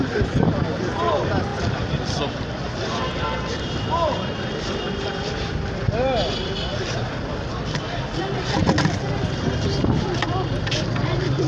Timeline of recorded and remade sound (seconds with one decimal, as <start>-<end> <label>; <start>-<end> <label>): 0.0-11.5 remade